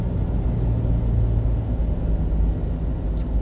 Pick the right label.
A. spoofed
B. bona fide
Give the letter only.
B